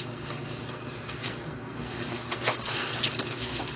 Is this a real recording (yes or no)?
no